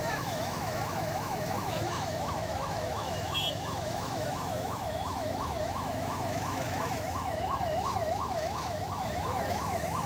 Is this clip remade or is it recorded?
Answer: remade